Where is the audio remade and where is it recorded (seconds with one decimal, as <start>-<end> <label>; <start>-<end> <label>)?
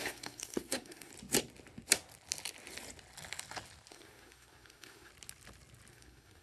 0.0-1.1 remade; 1.1-3.9 recorded; 3.9-5.1 remade; 5.1-5.9 recorded; 5.9-6.4 remade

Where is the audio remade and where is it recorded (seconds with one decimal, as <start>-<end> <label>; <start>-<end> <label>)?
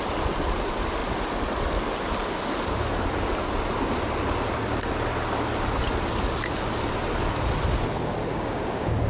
0.0-8.3 recorded; 8.3-9.1 remade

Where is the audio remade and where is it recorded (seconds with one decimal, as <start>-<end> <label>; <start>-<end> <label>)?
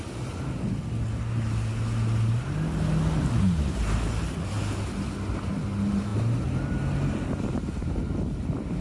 0.0-8.8 recorded